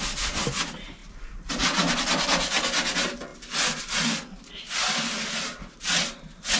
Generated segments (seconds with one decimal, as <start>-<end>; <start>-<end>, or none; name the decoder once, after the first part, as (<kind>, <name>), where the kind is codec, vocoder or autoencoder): none